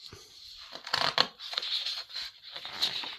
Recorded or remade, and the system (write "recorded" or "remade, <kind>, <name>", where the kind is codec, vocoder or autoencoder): recorded